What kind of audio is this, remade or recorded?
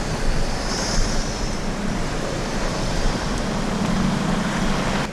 remade